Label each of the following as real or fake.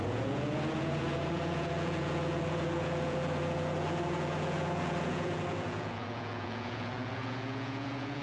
fake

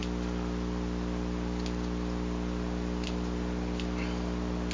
real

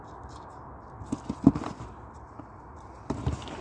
real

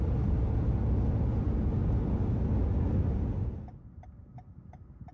real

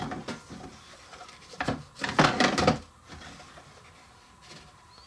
real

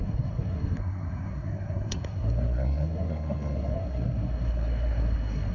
fake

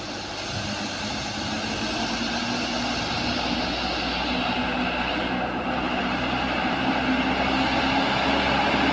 real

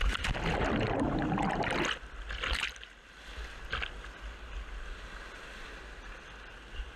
real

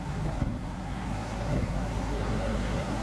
fake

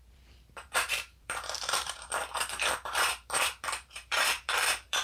fake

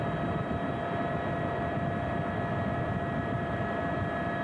real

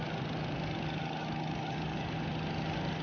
real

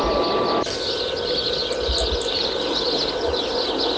real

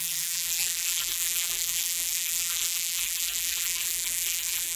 fake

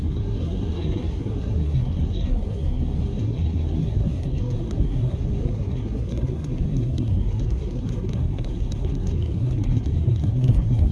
fake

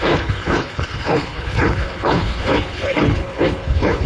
fake